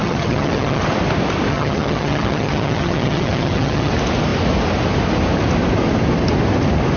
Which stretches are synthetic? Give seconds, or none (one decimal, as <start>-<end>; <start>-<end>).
0.0-0.8; 1.5-3.9